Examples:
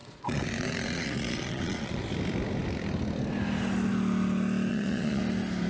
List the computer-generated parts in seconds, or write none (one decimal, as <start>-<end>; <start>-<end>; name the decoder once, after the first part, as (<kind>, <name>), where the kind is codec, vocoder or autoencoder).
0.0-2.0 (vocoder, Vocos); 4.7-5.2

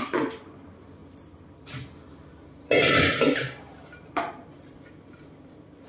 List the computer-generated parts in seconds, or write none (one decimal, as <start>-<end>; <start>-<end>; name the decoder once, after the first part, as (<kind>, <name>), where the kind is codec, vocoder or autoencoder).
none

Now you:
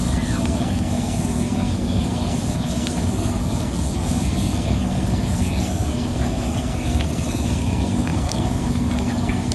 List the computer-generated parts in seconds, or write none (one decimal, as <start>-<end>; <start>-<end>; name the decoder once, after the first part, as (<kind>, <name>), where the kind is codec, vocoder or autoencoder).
0.0-9.5 (codec, SNAC)

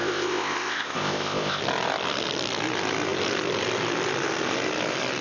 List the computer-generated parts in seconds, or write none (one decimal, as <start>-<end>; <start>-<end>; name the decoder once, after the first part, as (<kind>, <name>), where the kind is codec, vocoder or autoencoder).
0.0-1.6 (codec, ZipCodec)

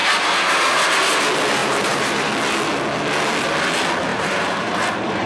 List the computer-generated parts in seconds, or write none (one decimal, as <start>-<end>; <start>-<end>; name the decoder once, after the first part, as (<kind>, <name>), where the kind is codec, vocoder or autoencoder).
1.6-2.3 (vocoder, BigVGAN v2); 4.1-5.3